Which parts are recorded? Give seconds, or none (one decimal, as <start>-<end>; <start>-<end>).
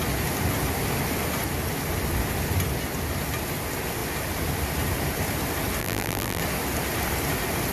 0.0-5.8; 6.4-7.7